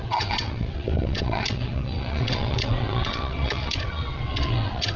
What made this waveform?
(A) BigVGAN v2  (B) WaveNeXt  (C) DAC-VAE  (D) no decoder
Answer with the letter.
B